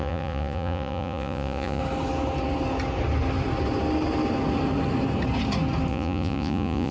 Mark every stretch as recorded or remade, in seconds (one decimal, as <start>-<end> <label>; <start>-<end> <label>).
0.0-1.8 remade; 1.8-5.9 recorded; 5.9-6.9 remade